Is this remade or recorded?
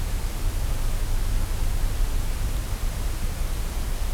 recorded